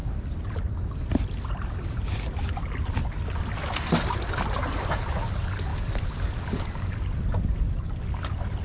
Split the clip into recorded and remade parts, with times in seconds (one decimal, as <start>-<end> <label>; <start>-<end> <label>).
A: 0.0-5.7 recorded; 5.7-7.0 remade; 7.0-8.6 recorded